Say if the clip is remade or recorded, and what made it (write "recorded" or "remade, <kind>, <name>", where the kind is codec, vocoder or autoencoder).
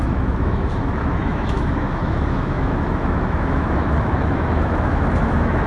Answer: remade, autoencoder, DAC-VAE